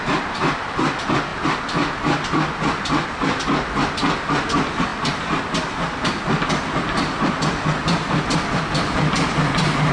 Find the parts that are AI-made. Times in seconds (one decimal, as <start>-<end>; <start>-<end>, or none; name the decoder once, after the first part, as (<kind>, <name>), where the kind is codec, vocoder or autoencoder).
none